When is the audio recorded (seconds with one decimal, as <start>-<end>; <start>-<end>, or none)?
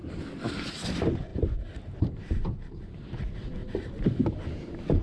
0.0-1.3; 3.0-3.6